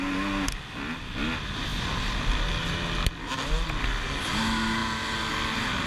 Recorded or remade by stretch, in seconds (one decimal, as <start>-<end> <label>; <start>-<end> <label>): 0.0-5.9 recorded